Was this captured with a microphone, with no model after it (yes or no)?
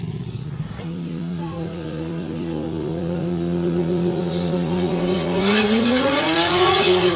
no